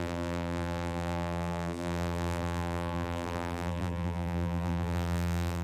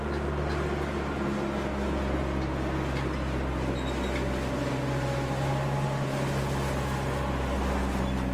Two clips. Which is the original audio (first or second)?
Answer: second